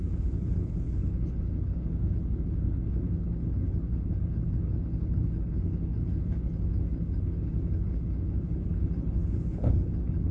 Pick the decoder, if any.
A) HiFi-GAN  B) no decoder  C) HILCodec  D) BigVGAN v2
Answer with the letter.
C